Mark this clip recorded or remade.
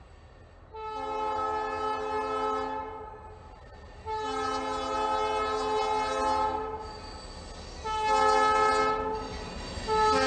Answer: recorded